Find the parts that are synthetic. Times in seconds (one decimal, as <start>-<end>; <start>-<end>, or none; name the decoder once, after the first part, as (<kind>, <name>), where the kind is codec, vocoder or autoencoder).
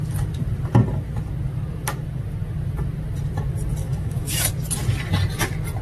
3.8-4.5 (autoencoder, DAC-VAE)